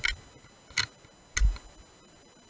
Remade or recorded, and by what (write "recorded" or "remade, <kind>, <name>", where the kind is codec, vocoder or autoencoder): recorded